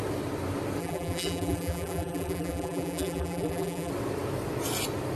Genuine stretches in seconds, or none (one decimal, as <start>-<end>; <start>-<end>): 0.0-0.8; 3.9-5.2